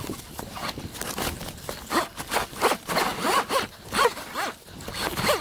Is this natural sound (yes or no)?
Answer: yes